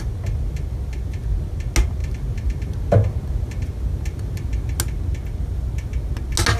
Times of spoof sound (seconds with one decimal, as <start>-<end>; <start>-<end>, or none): none